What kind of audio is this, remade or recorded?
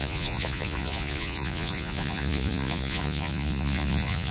remade